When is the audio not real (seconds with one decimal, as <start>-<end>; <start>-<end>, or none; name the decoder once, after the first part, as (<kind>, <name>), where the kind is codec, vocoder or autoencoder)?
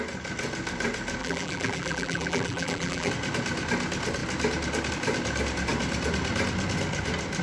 1.2-3.1 (vocoder, BigVGAN v2)